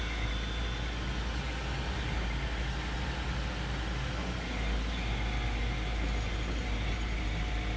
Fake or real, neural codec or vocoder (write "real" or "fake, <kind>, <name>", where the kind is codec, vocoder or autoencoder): real